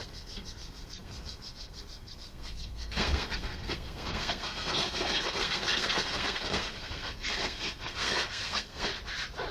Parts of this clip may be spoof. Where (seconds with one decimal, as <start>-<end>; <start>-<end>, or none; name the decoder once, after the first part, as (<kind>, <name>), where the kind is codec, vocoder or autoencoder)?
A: 0.0-8.9 (codec, SNAC)